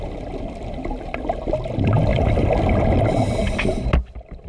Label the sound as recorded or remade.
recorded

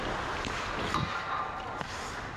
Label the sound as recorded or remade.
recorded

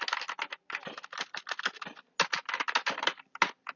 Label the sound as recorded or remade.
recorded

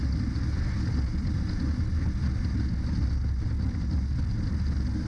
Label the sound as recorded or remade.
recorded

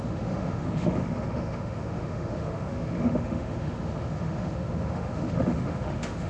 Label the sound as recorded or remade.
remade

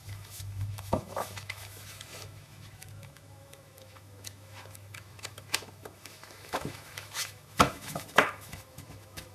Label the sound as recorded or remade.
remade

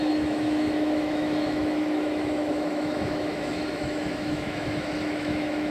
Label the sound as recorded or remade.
remade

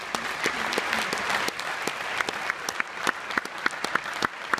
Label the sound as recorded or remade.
recorded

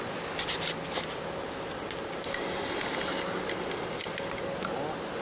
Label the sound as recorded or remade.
recorded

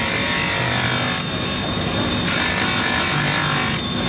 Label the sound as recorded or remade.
recorded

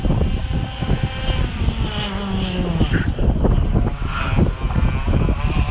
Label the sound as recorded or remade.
recorded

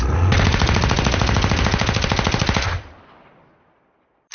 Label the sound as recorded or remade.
recorded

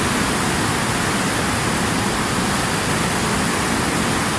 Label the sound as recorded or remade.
recorded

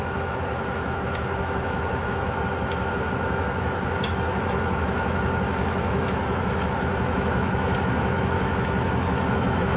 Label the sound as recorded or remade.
remade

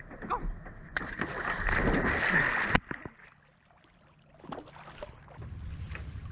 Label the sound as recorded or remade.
recorded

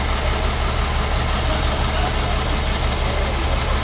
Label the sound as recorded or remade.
recorded